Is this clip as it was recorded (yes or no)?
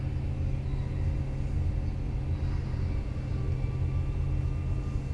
yes